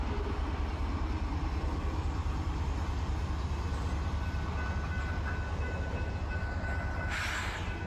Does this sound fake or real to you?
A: real